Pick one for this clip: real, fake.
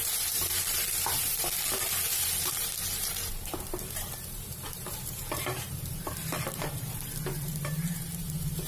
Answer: fake